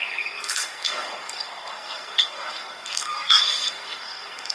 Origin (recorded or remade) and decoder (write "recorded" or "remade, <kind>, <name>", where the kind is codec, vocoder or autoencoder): remade, codec, SNAC